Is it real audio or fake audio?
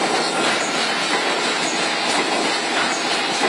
real